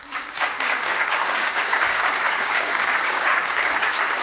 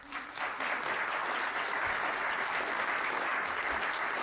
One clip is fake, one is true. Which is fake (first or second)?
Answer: first